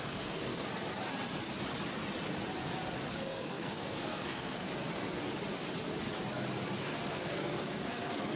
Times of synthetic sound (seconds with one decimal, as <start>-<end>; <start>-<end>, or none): 0.0-0.7; 3.1-4.7; 7.1-8.4